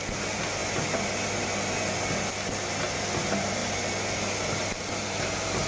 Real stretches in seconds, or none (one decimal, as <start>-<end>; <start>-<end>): 0.0-5.7